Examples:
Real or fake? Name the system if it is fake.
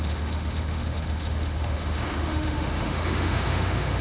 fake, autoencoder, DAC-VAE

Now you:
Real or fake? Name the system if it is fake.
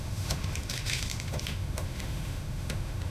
fake, autoencoder, DAC-VAE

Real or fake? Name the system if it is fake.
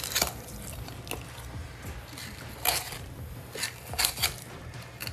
real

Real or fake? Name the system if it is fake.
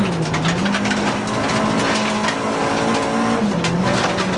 real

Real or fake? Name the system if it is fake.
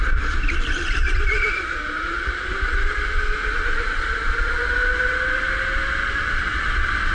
real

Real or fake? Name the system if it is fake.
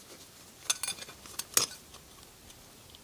real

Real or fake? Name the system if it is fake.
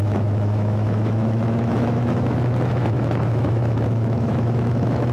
fake, autoencoder, DAC-VAE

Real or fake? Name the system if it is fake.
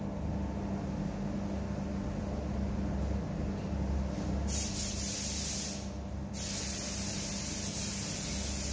real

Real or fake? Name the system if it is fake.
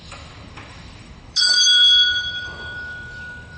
fake, autoencoder, DAC-VAE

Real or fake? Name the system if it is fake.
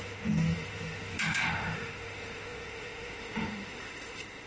fake, autoencoder, DAC-VAE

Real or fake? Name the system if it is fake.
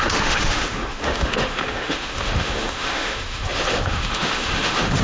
fake, autoencoder, DAC-VAE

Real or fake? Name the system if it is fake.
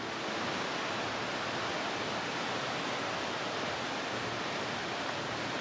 real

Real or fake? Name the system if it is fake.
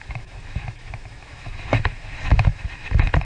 fake, autoencoder, DAC-VAE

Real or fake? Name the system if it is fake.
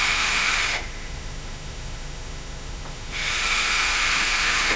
fake, autoencoder, DAC-VAE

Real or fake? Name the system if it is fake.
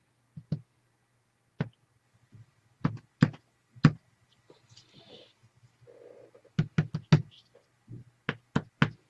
real